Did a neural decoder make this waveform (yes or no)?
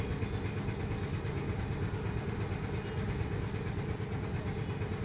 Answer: no